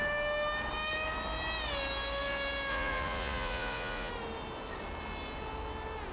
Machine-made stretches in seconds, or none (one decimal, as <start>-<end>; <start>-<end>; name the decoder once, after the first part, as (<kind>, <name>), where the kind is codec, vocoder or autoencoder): 2.7-4.1 (vocoder, Vocos)